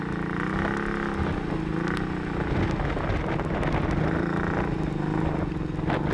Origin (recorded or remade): recorded